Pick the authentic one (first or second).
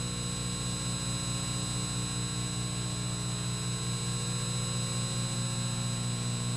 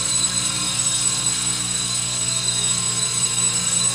first